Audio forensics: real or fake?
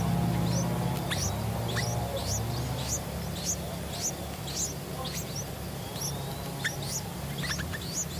real